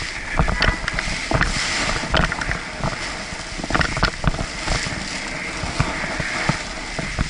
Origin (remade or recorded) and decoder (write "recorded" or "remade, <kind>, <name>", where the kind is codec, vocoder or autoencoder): recorded